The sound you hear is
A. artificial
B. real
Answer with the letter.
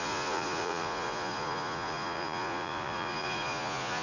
A